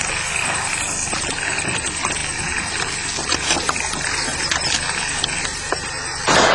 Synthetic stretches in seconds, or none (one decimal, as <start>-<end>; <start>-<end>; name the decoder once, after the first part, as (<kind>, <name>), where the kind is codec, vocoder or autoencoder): none